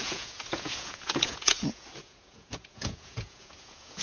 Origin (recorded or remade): remade